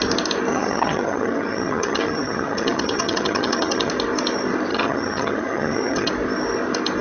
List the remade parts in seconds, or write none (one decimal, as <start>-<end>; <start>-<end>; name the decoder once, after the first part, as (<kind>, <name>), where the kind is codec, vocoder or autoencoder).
0.5-3.9 (vocoder, HiFi-GAN); 4.7-6.1